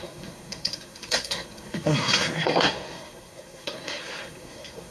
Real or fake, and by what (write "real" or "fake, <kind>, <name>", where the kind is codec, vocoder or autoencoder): fake, codec, SNAC